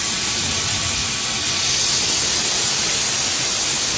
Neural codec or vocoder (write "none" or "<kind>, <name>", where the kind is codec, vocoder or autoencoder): none